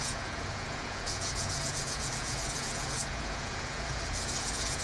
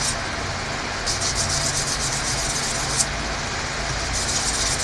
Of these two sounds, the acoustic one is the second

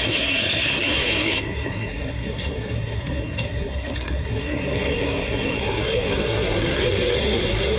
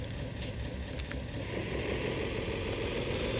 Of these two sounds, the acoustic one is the second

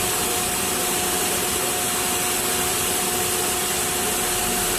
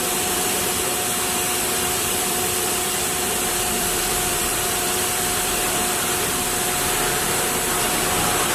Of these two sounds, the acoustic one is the first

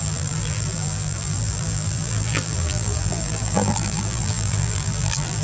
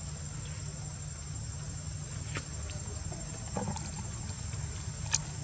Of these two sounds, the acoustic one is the second